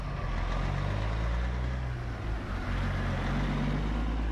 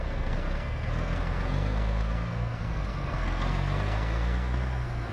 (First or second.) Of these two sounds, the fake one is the second